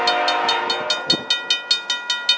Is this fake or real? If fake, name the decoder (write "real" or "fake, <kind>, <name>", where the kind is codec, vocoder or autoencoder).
real